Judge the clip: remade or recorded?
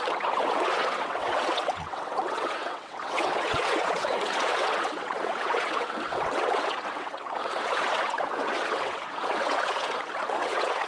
remade